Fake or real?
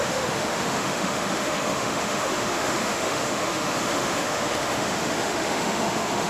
fake